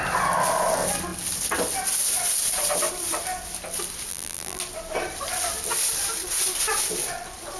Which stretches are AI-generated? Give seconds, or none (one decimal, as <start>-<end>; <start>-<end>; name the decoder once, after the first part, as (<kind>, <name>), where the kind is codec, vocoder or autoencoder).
4.1-4.6 (vocoder, BigVGAN v2)